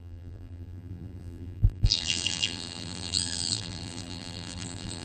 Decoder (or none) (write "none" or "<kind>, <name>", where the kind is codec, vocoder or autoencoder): vocoder, BigVGAN v2